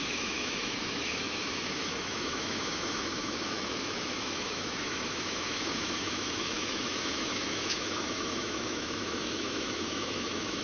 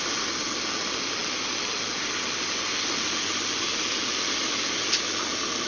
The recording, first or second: second